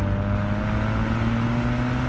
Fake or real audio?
real